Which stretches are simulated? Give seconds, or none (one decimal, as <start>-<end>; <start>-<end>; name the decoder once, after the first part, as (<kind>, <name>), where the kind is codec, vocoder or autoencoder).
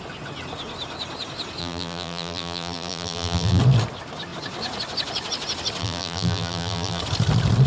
1.6-3.6 (vocoder, BigVGAN v2); 5.8-7.0